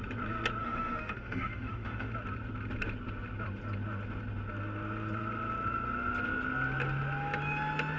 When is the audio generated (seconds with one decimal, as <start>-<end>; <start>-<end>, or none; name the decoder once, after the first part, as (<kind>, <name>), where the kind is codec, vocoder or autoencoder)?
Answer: 0.6-2.1 (autoencoder, DAC-VAE)